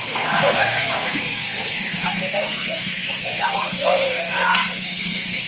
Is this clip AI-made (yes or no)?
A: yes